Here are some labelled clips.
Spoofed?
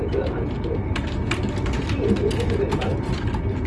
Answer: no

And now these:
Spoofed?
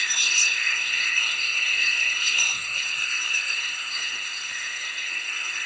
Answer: yes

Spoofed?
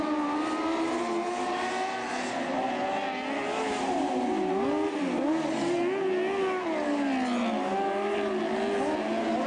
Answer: no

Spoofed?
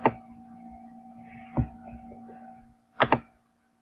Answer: no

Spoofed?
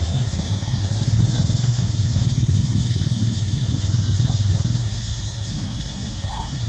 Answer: yes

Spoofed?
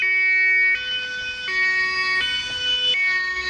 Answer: no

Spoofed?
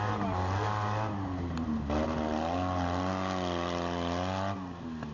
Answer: no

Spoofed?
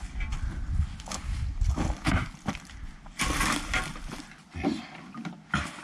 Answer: no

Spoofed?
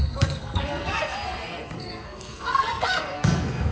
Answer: yes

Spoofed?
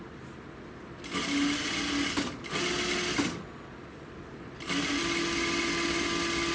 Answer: no